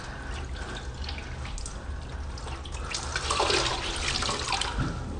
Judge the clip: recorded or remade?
recorded